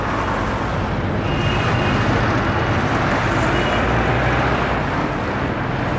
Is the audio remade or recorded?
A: recorded